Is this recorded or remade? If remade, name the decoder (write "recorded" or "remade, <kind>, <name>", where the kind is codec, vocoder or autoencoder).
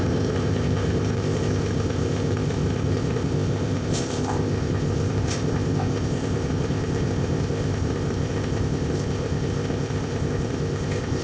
remade, codec, ZipCodec